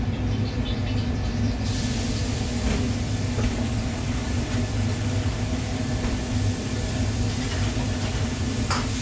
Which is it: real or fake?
real